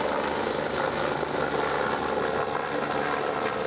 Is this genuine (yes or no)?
yes